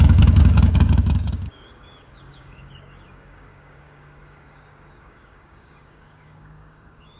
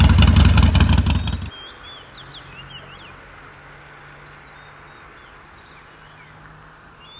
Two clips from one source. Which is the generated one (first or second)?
first